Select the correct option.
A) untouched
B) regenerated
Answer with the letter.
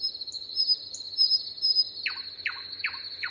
A